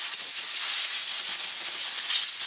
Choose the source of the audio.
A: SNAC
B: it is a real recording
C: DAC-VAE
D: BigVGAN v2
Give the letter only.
B